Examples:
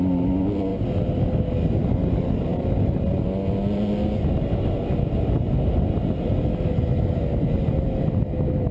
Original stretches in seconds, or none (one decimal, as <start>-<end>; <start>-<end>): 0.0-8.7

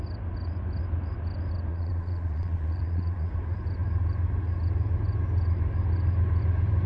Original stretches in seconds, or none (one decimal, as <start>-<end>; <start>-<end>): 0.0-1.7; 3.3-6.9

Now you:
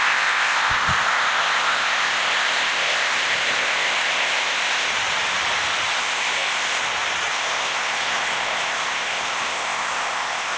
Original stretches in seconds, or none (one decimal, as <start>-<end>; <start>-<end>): 4.9-5.9; 6.8-7.3

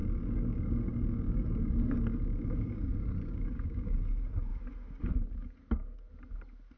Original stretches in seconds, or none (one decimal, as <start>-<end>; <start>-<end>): 4.1-6.8